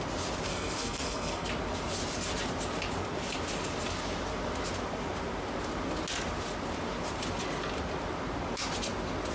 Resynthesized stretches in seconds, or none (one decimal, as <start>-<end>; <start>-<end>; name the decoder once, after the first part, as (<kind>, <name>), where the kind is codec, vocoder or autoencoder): 0.5-1.5 (codec, SNAC)